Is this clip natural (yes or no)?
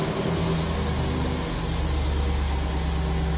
yes